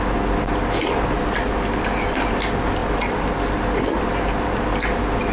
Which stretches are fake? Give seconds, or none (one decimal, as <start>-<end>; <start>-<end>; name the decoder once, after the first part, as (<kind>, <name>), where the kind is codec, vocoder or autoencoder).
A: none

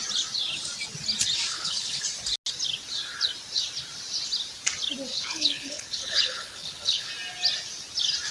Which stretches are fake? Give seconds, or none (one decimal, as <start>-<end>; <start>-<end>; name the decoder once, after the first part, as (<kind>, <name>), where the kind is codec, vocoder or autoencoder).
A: 1.5-2.0 (codec, HILCodec); 5.1-7.1

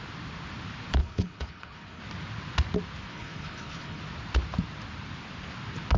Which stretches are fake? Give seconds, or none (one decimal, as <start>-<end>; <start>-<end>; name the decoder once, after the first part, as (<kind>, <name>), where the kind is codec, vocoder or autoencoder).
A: 1.0-2.0 (codec, HILCodec); 3.1-4.0

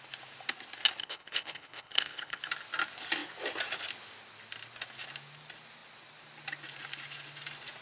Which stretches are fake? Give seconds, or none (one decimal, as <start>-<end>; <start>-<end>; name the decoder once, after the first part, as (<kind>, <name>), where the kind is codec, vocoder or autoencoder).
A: 1.0-2.4 (codec, HILCodec)

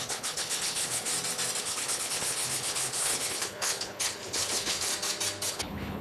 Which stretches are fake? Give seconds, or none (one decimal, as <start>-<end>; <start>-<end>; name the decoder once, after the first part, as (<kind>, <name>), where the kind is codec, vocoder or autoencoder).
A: 0.0-1.1 (codec, HILCodec); 1.6-4.9; 5.5-6.0